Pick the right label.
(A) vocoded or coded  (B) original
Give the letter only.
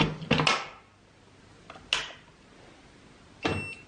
B